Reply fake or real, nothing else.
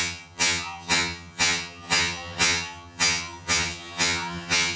fake